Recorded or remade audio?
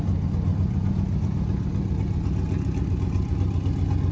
recorded